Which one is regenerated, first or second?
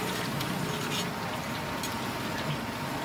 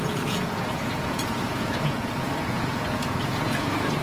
second